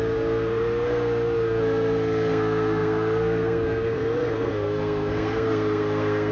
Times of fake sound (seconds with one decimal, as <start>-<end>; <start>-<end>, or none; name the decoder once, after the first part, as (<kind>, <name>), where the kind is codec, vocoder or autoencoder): 0.0-6.3 (codec, SNAC)

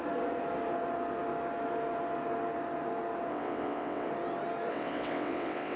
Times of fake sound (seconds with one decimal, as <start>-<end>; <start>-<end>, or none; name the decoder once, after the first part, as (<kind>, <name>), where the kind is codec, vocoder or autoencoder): 3.3-4.1 (vocoder, WaveNeXt); 4.7-5.8

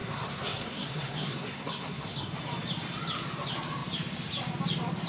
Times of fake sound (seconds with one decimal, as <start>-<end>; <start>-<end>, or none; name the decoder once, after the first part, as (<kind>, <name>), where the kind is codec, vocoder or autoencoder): 0.0-2.3 (codec, SNAC)

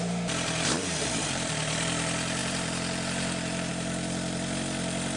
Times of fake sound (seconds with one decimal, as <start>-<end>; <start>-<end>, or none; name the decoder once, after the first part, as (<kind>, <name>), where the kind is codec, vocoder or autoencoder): 2.4-3.7 (vocoder, BigVGAN v2)

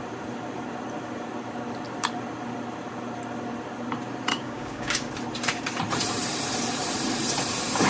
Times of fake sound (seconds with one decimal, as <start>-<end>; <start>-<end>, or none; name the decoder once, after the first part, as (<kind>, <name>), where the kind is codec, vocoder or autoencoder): 4.3-5.1 (codec, DAC)

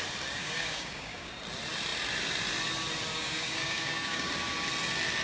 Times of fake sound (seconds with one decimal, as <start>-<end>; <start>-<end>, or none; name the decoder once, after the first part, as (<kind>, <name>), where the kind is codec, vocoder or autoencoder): 0.4-1.3 (codec, DAC); 3.1-4.3

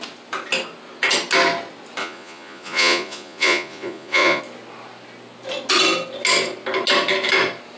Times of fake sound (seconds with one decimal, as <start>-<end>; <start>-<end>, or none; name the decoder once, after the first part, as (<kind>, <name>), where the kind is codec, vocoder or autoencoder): 2.0-4.4 (vocoder, Vocos)

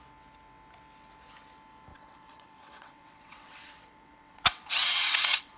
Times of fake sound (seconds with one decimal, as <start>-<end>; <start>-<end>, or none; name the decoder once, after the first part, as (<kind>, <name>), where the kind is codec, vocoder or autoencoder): 1.9-5.6 (vocoder, WaveNeXt)